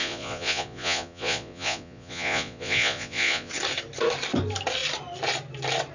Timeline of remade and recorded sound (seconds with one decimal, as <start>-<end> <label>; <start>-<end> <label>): 0.0-3.5 remade; 3.5-5.9 recorded